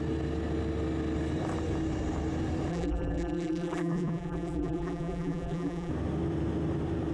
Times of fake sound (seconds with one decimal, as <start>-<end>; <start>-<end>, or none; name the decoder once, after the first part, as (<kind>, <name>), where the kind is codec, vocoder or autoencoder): 2.7-5.9 (vocoder, BigVGAN v2)